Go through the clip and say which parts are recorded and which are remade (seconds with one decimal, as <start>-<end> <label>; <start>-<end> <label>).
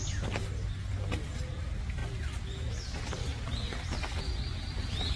0.0-5.2 recorded